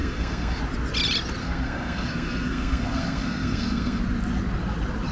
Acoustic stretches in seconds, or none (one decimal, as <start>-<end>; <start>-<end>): 0.6-1.4; 4.0-5.1